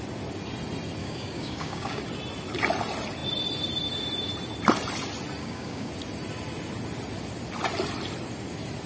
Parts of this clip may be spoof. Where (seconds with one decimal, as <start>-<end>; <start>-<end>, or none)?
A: 1.0-2.0; 5.4-5.9